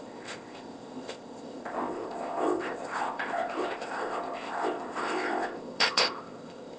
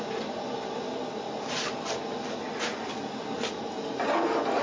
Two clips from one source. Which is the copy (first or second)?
first